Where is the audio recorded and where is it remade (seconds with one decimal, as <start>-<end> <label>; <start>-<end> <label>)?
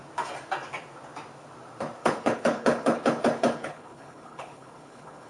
0.0-2.0 recorded; 2.0-5.3 remade